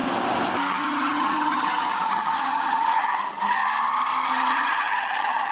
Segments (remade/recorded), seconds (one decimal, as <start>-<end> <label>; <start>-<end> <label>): 0.0-0.7 recorded; 0.7-3.6 remade; 3.6-4.3 recorded; 4.3-5.5 remade